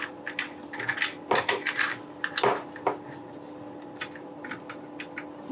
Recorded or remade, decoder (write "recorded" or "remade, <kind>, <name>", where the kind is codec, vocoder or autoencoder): recorded